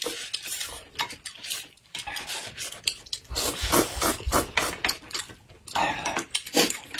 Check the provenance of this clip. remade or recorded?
remade